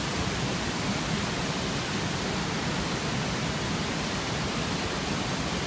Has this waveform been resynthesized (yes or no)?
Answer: no